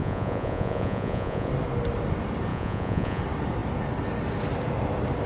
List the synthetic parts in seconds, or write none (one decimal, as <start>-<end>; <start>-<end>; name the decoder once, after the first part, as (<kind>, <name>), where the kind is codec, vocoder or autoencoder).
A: 0.0-1.5 (vocoder, Vocos); 2.5-3.2